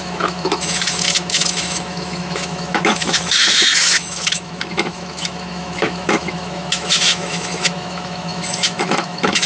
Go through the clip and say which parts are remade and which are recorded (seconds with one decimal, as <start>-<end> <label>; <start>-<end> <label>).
0.0-9.5 remade